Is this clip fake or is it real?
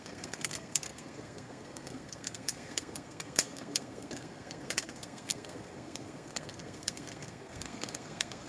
fake